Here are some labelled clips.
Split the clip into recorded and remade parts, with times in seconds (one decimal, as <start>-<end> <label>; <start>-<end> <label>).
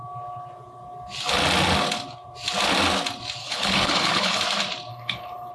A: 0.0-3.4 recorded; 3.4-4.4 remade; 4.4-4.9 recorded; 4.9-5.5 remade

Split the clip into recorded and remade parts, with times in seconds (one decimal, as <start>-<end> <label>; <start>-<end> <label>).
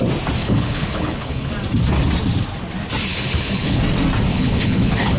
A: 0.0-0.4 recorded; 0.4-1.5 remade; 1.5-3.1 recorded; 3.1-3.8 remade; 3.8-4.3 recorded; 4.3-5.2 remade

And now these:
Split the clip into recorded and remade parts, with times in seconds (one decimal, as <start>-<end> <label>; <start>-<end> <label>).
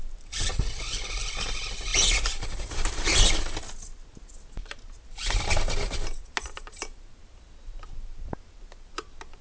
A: 0.0-9.4 recorded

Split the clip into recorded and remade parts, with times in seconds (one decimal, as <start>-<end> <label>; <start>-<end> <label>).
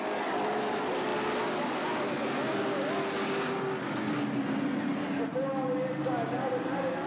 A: 0.0-7.1 recorded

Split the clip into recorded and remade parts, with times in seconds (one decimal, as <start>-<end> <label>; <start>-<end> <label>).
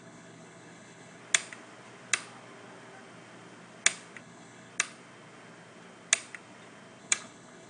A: 0.0-1.2 remade; 1.2-4.2 recorded; 4.2-4.7 remade; 4.7-7.0 recorded; 7.0-7.7 remade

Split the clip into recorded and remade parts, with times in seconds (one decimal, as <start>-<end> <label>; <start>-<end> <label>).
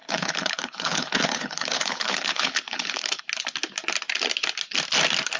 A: 0.0-3.2 remade; 3.2-5.4 recorded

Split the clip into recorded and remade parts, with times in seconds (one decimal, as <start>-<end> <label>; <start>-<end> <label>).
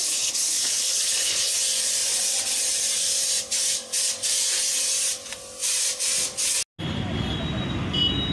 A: 0.0-1.6 remade; 1.6-8.3 recorded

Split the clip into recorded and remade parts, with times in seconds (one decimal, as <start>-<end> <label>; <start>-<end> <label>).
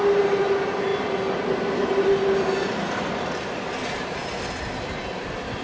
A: 0.0-5.6 recorded